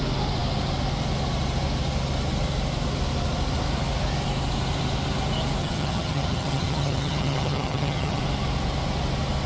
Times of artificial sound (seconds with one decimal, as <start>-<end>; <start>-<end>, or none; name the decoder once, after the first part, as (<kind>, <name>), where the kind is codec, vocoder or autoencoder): 5.6-8.2 (vocoder, HiFi-GAN)